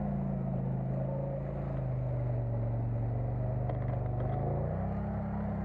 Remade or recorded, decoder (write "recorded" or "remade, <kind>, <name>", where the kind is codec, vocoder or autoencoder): recorded